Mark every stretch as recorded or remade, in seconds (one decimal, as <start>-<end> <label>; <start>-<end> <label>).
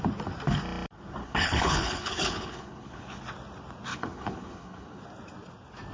0.0-1.2 recorded; 1.2-3.2 remade; 3.2-3.9 recorded; 3.9-5.0 remade; 5.0-5.9 recorded